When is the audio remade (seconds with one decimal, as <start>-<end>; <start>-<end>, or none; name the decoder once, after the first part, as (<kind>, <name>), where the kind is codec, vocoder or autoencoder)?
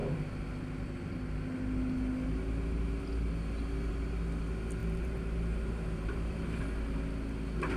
4.8-6.6 (vocoder, BigVGAN v2)